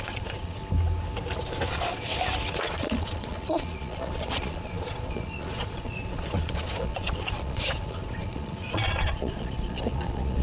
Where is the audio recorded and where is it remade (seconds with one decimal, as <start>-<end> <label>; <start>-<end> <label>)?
0.0-0.6 remade; 0.6-1.7 recorded; 1.7-2.1 remade; 2.1-2.6 recorded; 2.6-10.4 remade